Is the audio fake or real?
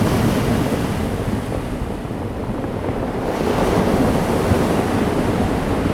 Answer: real